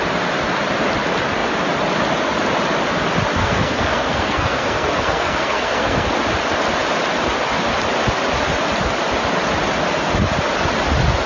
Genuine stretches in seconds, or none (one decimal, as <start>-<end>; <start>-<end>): 0.0-3.4; 6.1-11.3